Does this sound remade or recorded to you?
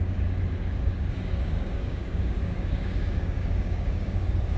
remade